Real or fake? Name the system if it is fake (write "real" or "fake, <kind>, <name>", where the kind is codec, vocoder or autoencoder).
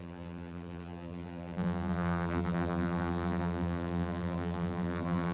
fake, vocoder, BigVGAN v2